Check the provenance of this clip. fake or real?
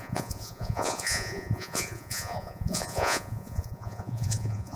fake